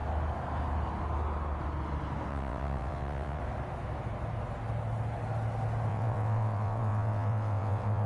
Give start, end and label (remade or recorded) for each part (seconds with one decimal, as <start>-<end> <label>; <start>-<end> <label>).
0.0-2.3 recorded; 2.3-3.4 remade; 3.4-5.9 recorded; 5.9-8.1 remade